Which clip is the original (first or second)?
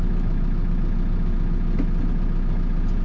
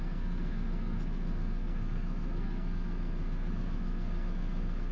first